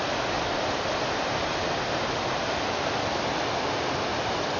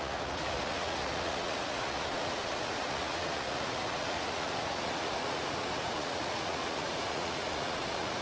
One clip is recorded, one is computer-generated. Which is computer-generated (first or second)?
second